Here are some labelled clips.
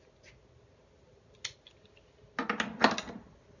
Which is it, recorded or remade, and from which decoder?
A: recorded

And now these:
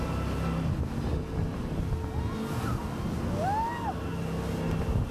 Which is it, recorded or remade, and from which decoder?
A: recorded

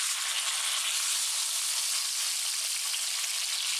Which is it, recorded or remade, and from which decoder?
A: recorded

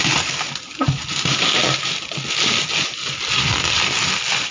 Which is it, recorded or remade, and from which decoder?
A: recorded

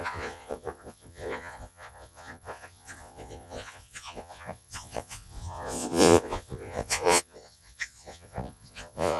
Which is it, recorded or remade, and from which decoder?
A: remade, vocoder, Vocos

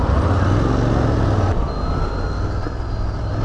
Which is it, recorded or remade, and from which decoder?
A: recorded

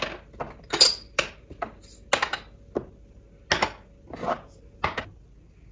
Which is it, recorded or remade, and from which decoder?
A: recorded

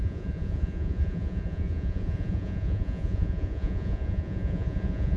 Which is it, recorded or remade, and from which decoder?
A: remade, vocoder, Vocos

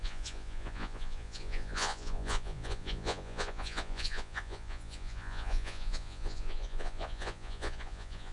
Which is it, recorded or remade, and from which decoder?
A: remade, vocoder, Vocos